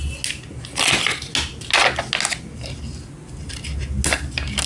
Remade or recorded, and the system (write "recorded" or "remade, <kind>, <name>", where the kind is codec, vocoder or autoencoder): recorded